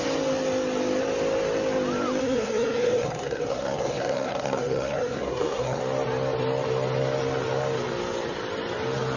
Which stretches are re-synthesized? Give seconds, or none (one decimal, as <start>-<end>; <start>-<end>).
2.2-5.8